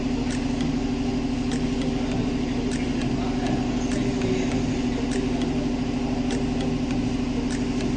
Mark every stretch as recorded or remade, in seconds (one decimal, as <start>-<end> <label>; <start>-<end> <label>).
0.0-8.0 recorded

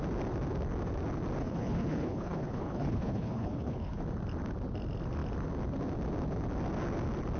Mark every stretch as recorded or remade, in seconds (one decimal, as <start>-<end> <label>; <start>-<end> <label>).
0.0-1.4 recorded; 1.4-4.0 remade; 4.0-7.4 recorded

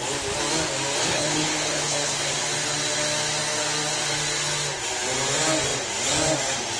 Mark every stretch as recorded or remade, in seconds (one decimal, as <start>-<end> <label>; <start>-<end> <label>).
0.0-1.0 recorded; 1.0-2.3 remade; 2.3-6.8 recorded

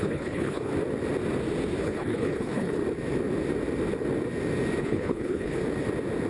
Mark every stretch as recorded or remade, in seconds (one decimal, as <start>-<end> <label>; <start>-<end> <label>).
0.0-0.7 remade; 0.7-1.8 recorded; 1.8-2.8 remade; 2.8-4.8 recorded; 4.8-5.6 remade; 5.6-6.3 recorded

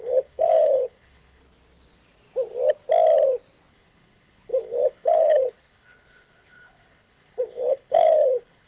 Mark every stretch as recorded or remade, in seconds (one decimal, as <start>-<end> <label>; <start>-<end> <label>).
0.0-1.4 remade; 1.4-3.7 recorded; 3.7-8.7 remade

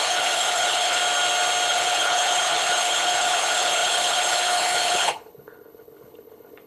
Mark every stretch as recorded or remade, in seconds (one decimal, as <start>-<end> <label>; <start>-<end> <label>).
0.0-1.0 remade; 1.0-1.7 recorded; 1.7-6.7 remade